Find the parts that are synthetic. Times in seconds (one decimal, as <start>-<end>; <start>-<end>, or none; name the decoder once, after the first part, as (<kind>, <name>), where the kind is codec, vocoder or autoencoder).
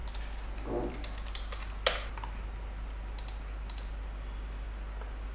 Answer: none